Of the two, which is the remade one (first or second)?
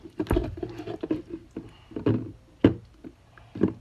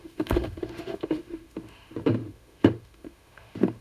second